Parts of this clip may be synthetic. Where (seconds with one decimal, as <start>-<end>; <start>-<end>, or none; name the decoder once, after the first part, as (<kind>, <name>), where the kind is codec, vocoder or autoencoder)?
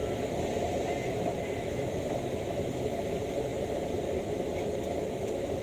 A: 1.1-3.5 (autoencoder, DAC-VAE); 4.4-5.6